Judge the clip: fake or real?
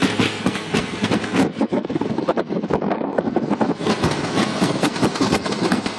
fake